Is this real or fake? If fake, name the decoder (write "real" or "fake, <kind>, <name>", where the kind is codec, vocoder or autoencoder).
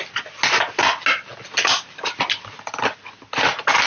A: real